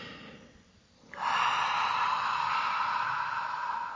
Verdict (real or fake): real